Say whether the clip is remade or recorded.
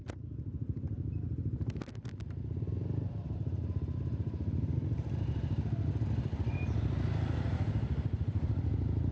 recorded